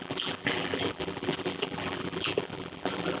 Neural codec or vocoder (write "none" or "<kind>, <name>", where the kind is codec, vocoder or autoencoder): vocoder, BigVGAN v2